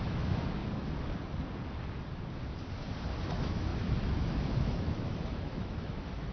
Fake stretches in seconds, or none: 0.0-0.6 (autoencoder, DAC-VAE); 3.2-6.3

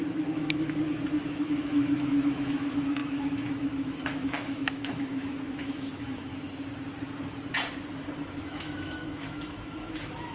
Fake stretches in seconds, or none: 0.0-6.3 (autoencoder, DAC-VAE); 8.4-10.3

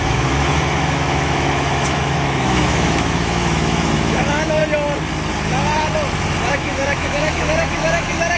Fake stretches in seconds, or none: 0.0-4.6 (autoencoder, DAC-VAE); 6.5-8.4

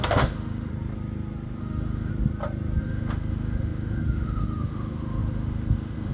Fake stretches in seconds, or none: 0.0-0.7 (autoencoder, DAC-VAE); 1.6-2.1; 2.8-6.1

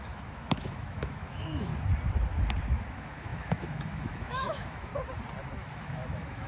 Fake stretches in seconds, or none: 0.0-1.7 (autoencoder, DAC-VAE); 2.9-4.9; 5.6-6.5